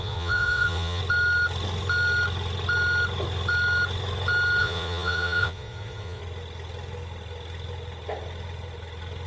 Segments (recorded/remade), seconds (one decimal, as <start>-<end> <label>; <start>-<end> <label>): 0.0-1.0 remade; 1.0-4.6 recorded; 4.6-6.2 remade; 6.2-9.3 recorded